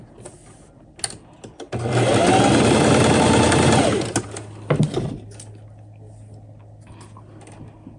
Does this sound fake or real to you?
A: real